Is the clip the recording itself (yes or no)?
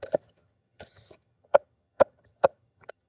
no